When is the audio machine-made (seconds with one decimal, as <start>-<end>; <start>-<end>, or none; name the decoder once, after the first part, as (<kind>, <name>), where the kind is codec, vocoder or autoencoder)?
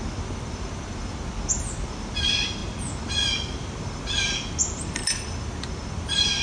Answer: none